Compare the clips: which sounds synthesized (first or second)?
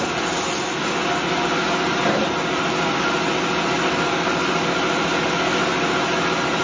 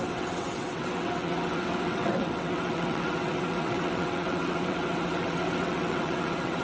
second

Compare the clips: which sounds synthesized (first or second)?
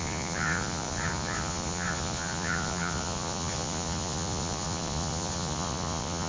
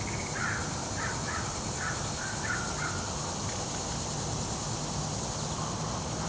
first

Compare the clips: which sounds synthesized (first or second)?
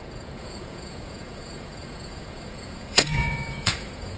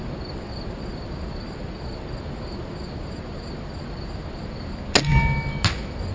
first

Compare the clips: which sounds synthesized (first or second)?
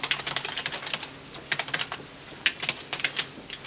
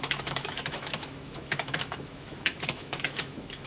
second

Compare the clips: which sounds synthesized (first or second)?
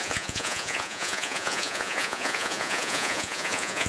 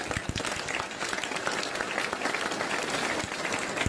first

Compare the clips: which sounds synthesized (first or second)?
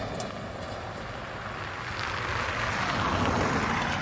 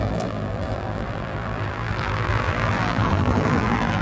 second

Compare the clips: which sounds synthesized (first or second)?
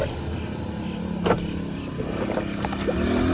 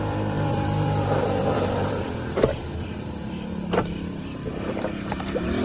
second